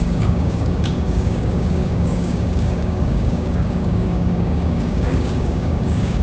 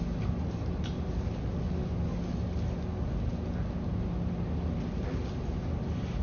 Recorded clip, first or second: second